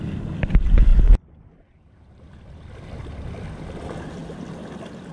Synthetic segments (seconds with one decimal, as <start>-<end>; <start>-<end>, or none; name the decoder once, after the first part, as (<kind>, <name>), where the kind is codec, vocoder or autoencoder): none